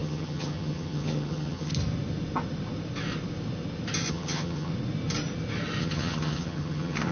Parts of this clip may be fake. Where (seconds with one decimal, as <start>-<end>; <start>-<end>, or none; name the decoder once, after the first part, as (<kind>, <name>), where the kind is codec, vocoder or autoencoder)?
0.0-1.7 (vocoder, HiFi-GAN); 4.1-4.7; 5.8-7.1